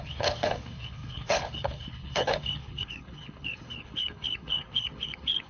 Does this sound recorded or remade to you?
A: remade